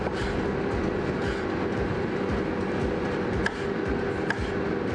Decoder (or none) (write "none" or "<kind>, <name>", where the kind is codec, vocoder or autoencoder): none